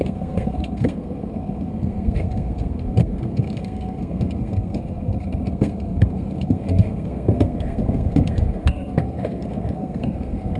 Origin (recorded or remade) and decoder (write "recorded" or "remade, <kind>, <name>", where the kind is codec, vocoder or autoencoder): remade, codec, SNAC